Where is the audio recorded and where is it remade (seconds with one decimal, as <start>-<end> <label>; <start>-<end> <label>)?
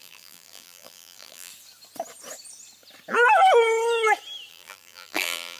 0.0-1.5 remade; 1.5-4.5 recorded; 4.5-5.6 remade